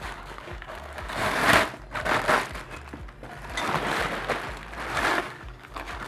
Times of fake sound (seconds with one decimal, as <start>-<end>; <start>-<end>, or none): 0.0-1.4; 5.1-6.1